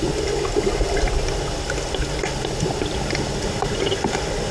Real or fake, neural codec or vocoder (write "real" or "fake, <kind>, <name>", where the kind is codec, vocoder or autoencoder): real